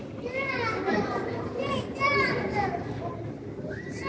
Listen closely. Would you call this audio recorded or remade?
recorded